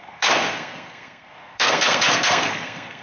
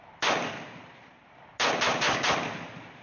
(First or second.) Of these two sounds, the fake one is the first